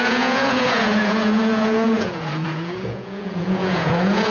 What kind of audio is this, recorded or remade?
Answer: remade